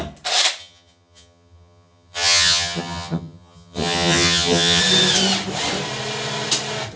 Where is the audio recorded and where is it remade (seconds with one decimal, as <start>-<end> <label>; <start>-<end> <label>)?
0.0-0.6 recorded; 0.6-4.8 remade; 4.8-7.0 recorded